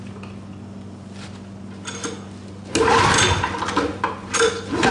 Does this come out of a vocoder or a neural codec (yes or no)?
no